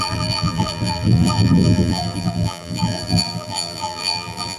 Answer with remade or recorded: remade